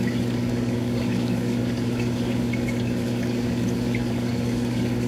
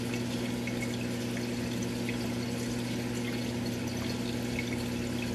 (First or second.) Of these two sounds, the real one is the second